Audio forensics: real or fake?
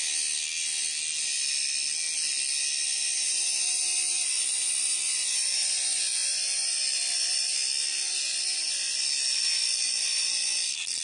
real